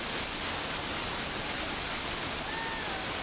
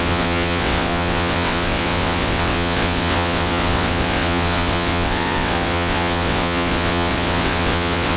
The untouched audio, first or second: first